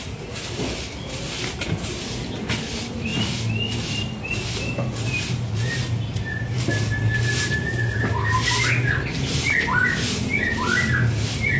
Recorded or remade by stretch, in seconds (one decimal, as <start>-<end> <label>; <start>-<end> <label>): 0.0-11.6 recorded